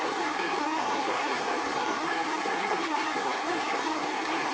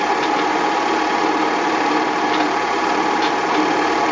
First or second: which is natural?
second